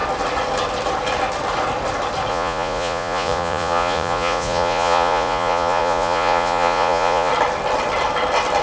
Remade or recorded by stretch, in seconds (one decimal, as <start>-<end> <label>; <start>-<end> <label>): 0.0-2.3 recorded; 2.3-7.3 remade; 7.3-8.6 recorded